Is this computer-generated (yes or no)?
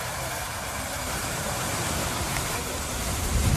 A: yes